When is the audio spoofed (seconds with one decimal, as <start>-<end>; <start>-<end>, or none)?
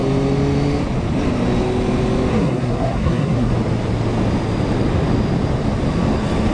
2.3-3.5